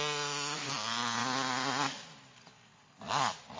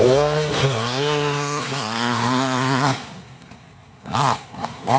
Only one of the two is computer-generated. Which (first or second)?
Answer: second